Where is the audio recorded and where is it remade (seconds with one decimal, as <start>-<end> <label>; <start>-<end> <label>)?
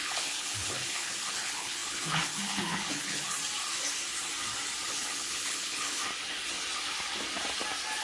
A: 0.0-3.4 remade; 3.4-4.9 recorded; 4.9-6.0 remade; 6.0-8.0 recorded